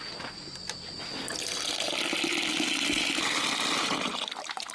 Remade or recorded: recorded